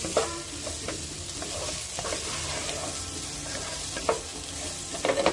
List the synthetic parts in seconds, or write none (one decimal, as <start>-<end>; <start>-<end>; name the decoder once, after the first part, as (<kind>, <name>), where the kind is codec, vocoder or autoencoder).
none